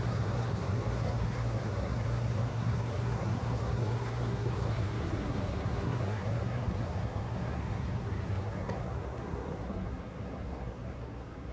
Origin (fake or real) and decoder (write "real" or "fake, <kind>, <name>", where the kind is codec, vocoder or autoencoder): fake, codec, SNAC